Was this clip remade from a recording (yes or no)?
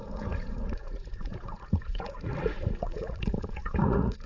yes